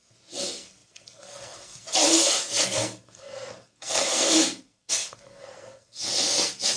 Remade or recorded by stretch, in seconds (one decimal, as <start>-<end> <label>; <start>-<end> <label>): 0.0-6.8 remade